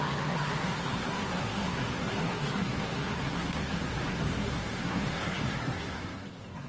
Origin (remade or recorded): remade